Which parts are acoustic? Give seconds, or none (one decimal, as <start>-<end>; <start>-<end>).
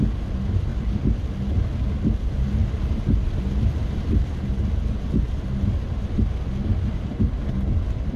0.0-8.2